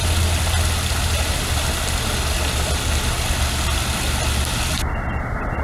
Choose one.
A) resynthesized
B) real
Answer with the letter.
B